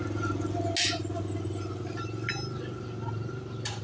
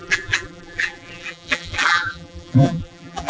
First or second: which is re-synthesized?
second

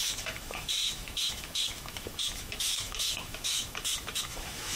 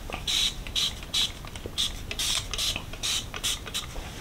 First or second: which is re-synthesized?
first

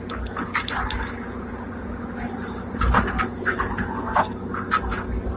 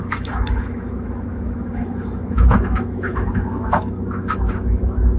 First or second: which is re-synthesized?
second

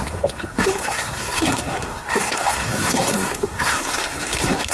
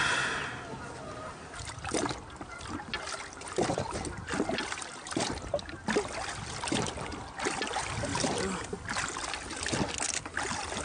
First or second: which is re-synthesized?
first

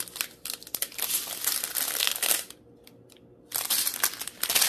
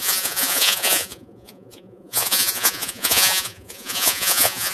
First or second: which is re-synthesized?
second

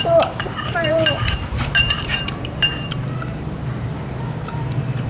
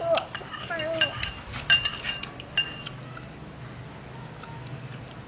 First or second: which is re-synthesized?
first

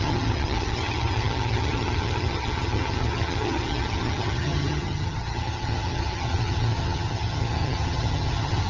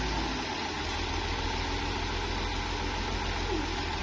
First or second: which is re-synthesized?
first